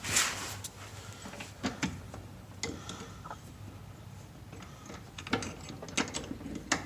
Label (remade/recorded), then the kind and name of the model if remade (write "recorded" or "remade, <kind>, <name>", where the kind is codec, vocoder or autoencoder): recorded